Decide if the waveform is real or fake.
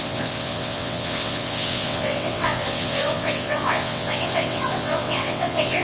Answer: fake